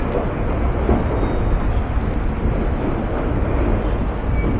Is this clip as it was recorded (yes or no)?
yes